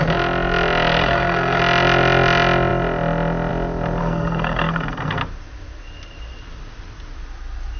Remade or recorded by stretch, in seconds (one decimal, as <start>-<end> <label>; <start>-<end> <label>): 0.0-1.0 recorded; 1.0-1.6 remade; 1.6-4.0 recorded; 4.0-5.2 remade; 5.2-7.8 recorded